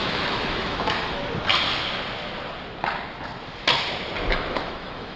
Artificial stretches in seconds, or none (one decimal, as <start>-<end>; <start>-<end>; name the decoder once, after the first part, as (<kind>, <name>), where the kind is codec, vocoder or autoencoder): 0.0-1.2 (autoencoder, DAC-VAE); 4.3-5.2